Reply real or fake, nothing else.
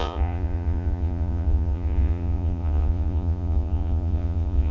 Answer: fake